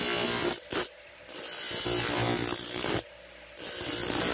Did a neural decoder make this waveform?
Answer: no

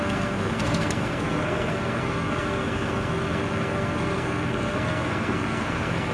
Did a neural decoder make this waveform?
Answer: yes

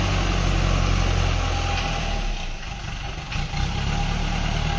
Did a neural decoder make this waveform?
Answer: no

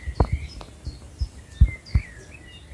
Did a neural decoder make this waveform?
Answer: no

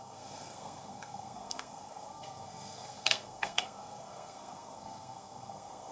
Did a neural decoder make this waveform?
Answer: yes